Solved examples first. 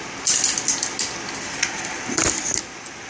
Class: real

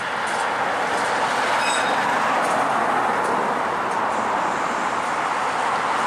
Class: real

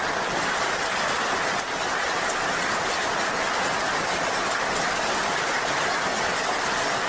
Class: real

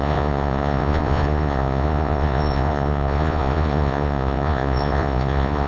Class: fake